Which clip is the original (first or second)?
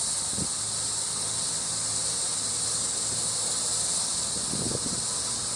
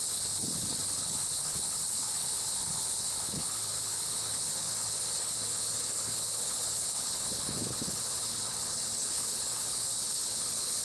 first